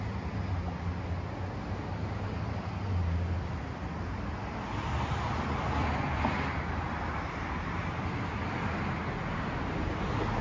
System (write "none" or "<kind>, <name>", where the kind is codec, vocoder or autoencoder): none